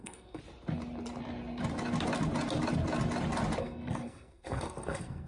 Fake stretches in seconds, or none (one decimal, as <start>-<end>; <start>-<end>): 0.0-0.4; 3.6-5.3